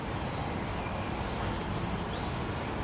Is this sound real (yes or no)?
yes